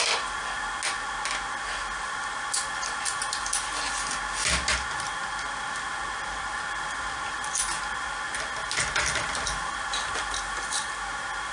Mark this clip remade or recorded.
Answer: recorded